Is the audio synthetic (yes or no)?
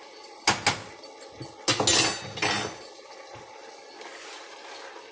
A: no